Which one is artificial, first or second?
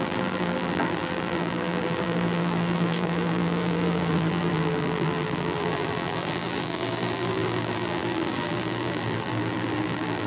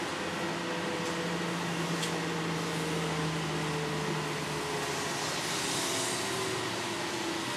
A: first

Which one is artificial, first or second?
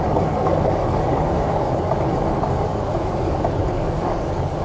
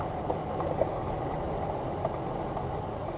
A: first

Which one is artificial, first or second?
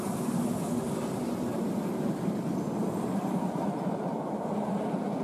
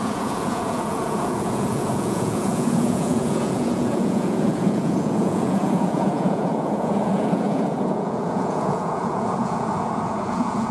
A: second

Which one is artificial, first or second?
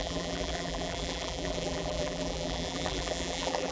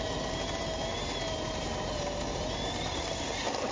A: first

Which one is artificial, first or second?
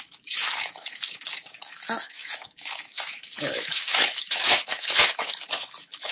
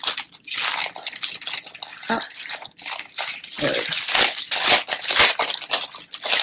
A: first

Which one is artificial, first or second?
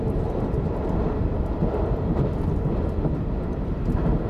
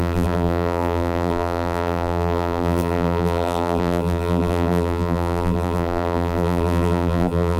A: second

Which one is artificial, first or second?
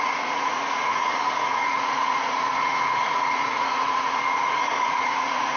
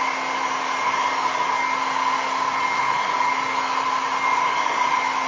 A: first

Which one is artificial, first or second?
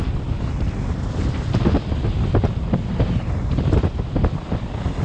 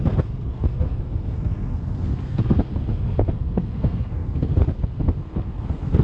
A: second